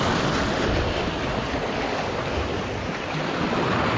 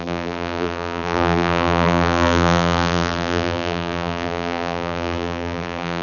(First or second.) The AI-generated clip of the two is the second